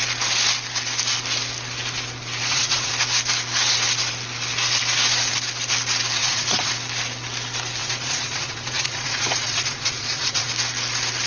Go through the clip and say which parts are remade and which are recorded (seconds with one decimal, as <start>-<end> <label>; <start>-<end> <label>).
0.0-2.4 recorded; 2.4-2.9 remade; 2.9-6.2 recorded; 6.2-6.7 remade; 6.7-7.8 recorded; 7.8-10.5 remade; 10.5-11.3 recorded

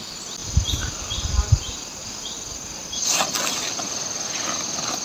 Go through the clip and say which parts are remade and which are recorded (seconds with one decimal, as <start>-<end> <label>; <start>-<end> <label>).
0.0-5.0 recorded

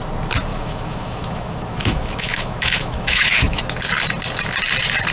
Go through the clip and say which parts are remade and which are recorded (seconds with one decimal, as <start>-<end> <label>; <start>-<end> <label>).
0.0-0.5 recorded; 0.5-3.6 remade; 3.6-5.1 recorded

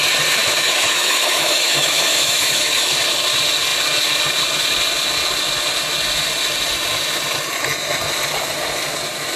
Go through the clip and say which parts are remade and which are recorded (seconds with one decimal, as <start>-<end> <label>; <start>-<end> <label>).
0.0-0.4 recorded; 0.4-2.9 remade; 2.9-9.4 recorded